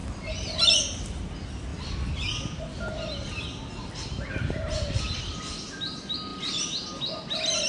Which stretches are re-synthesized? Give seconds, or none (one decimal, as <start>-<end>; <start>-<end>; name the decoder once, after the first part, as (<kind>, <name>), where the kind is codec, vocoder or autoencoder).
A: none